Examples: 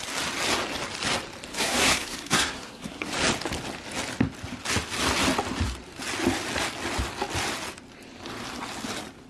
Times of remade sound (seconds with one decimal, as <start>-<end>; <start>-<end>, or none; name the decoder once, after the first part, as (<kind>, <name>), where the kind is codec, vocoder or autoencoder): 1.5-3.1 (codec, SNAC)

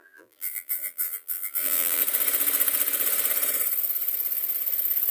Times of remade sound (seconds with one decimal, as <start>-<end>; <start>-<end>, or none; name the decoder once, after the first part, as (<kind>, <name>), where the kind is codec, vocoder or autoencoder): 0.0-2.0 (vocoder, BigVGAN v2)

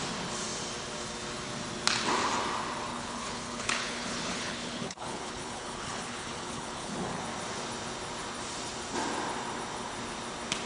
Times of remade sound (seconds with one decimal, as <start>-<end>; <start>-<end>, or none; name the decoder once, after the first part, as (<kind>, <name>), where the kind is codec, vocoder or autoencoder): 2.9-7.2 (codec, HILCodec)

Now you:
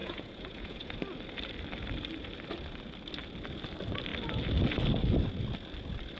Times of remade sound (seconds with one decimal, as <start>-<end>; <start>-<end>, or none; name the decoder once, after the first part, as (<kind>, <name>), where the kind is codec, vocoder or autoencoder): 0.0-0.9 (vocoder, Vocos)

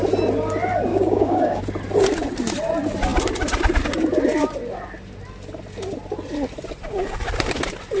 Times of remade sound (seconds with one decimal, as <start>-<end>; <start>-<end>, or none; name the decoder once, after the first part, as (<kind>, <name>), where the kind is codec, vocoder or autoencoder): 0.9-1.6 (codec, DAC)

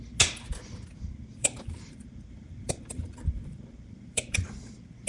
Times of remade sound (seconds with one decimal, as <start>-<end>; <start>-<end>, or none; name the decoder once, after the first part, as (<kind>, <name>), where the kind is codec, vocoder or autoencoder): 1.3-4.4 (vocoder, BigVGAN v2)